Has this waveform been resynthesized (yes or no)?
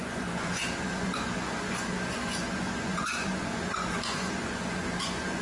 yes